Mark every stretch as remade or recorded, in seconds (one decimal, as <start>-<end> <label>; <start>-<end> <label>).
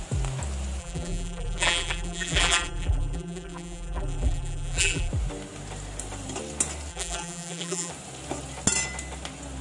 0.0-0.8 recorded; 0.8-5.1 remade; 5.1-6.9 recorded; 6.9-7.9 remade; 7.9-9.6 recorded